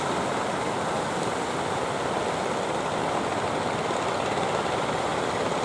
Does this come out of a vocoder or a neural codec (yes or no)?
no